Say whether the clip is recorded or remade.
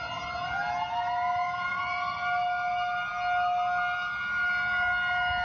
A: recorded